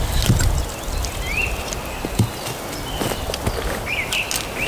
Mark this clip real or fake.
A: real